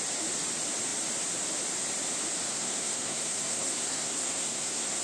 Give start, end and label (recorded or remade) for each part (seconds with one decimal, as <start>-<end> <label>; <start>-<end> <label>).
0.0-2.5 recorded; 2.5-5.0 remade